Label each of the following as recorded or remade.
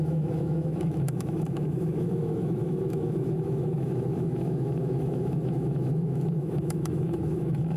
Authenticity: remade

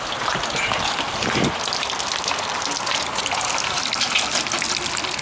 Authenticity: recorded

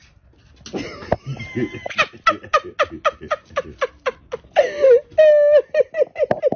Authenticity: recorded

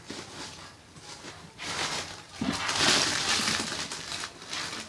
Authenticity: recorded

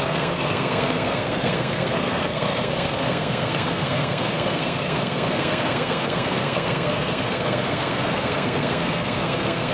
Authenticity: remade